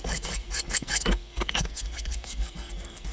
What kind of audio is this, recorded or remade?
remade